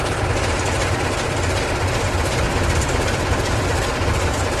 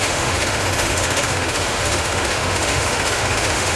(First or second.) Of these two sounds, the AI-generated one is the second